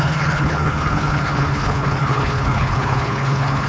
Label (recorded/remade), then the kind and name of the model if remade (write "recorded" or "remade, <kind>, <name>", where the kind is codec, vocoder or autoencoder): remade, codec, HILCodec